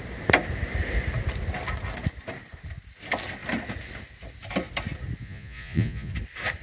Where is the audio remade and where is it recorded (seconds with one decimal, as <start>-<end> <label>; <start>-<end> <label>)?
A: 0.0-5.2 recorded; 5.2-6.1 remade; 6.1-6.6 recorded

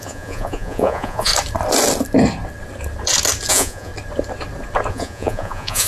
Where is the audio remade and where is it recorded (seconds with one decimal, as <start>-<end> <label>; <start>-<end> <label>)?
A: 0.0-1.3 remade; 1.3-3.5 recorded; 3.5-3.9 remade; 3.9-4.9 recorded; 4.9-5.9 remade

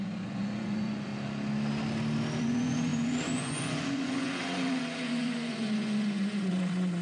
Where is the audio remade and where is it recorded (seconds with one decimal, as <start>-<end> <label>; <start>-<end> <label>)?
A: 0.0-1.1 remade; 1.1-2.4 recorded; 2.4-7.0 remade

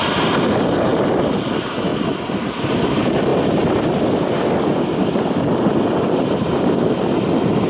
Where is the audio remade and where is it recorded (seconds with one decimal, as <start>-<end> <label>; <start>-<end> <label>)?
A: 0.0-7.7 recorded

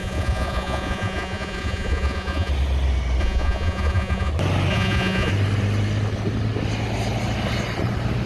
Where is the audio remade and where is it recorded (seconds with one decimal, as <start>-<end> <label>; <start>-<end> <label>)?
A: 0.0-2.5 remade; 2.5-3.2 recorded; 3.2-4.3 remade; 4.3-4.7 recorded; 4.7-5.3 remade; 5.3-8.3 recorded

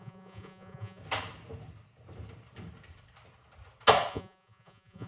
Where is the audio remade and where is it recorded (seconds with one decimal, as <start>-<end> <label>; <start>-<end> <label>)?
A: 0.0-1.0 remade; 1.0-4.1 recorded; 4.1-5.1 remade

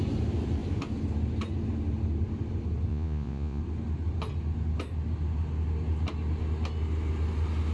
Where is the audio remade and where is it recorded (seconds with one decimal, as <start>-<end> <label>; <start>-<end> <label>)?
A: 0.0-2.9 recorded; 2.9-3.6 remade; 3.6-7.7 recorded

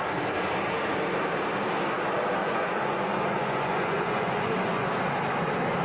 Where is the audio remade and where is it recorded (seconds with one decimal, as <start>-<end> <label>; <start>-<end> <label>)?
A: 0.0-2.4 recorded; 2.4-4.9 remade; 4.9-5.8 recorded